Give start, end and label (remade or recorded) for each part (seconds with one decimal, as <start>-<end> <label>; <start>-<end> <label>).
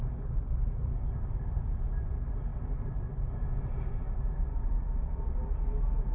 0.0-6.1 recorded